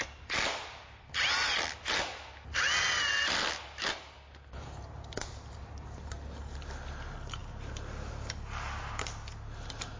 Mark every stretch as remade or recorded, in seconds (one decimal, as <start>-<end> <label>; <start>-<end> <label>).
0.0-10.0 recorded